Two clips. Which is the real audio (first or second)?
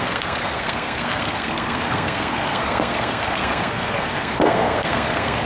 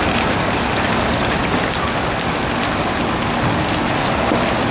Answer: second